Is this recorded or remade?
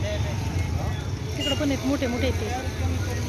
recorded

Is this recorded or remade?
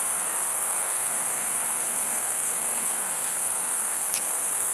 remade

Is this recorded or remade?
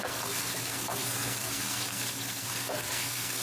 remade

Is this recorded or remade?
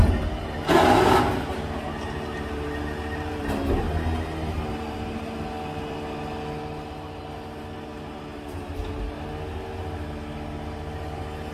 recorded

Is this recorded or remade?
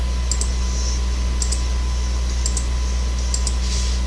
recorded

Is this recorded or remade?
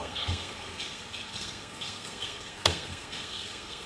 remade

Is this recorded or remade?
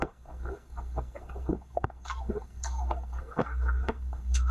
remade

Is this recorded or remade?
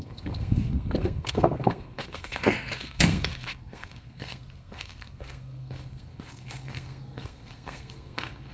remade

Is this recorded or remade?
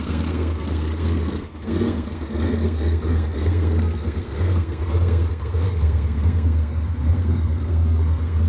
remade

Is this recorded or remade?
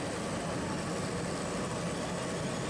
recorded